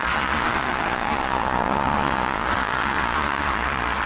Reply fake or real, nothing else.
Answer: fake